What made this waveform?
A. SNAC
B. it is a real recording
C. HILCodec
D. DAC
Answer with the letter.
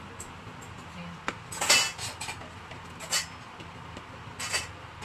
B